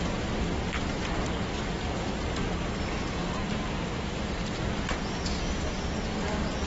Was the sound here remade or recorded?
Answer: recorded